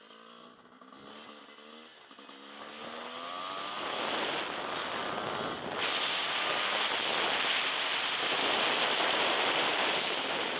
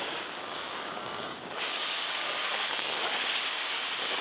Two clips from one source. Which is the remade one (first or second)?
second